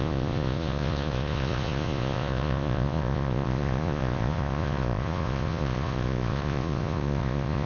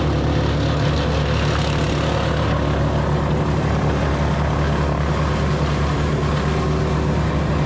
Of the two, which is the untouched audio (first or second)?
second